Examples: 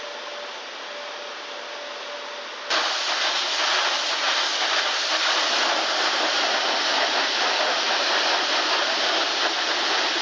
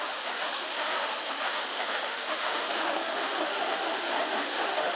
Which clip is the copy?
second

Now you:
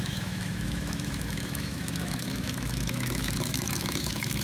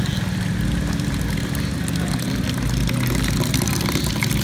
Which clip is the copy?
first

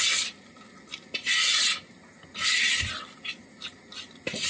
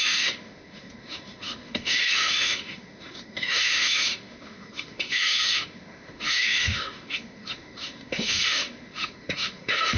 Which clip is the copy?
second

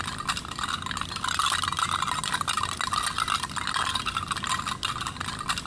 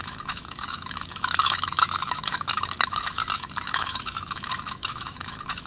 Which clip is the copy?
second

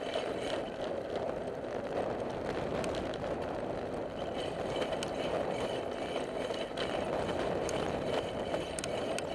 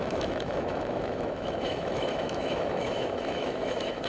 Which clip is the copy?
second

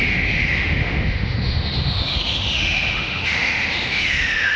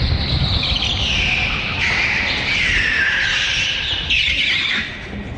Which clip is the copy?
first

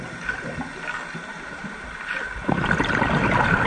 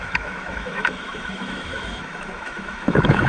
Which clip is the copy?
second